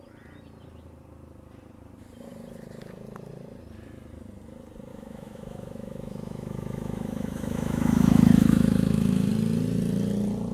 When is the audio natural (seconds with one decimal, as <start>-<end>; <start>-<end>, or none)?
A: 0.0-4.9; 9.3-10.5